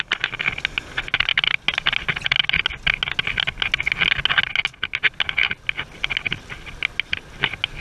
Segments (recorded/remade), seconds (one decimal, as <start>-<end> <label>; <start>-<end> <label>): 0.0-7.8 recorded